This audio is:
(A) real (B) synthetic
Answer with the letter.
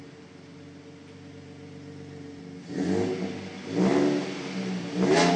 A